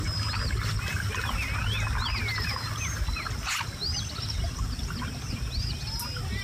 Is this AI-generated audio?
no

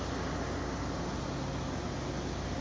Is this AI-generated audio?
no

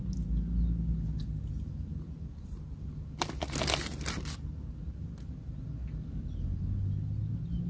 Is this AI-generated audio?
no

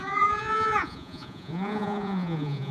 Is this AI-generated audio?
yes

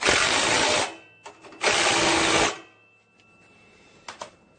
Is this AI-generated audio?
no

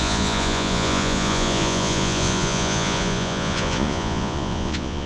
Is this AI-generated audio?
yes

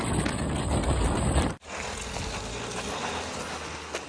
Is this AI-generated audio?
no